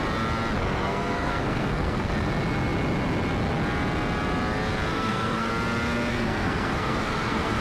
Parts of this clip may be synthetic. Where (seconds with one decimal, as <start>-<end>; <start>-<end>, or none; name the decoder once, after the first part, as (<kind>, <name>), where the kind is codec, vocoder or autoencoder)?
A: 0.6-2.1 (codec, SNAC); 4.9-5.5; 6.1-7.6